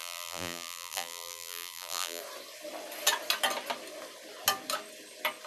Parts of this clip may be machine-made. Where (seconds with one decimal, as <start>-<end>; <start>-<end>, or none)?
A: 0.0-2.2